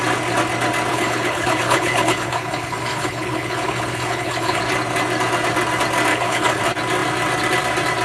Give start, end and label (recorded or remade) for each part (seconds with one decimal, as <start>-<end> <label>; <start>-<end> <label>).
0.0-0.9 recorded; 0.9-4.6 remade; 4.6-6.1 recorded; 6.1-6.6 remade; 6.6-8.0 recorded